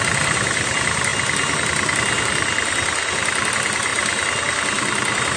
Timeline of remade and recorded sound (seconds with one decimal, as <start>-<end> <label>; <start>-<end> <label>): 0.0-5.4 recorded